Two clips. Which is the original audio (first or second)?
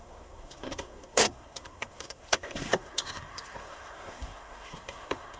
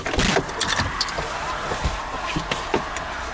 second